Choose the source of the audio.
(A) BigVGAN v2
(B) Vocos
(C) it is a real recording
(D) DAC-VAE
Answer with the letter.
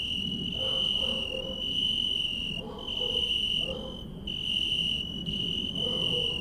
C